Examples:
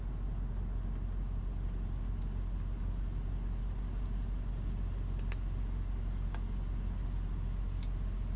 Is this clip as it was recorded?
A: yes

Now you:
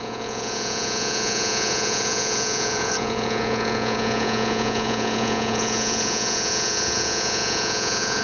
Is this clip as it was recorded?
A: no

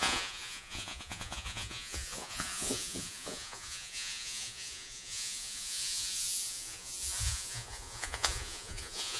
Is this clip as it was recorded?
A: no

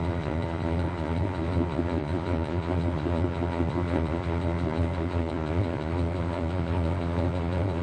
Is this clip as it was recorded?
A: no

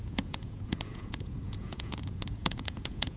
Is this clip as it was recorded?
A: no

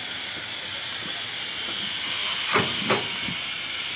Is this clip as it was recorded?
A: yes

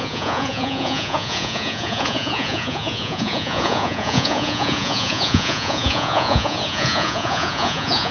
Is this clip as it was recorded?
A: no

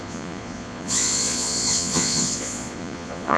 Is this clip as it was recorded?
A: no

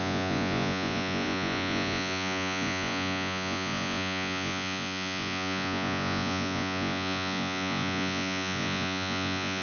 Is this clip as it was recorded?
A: no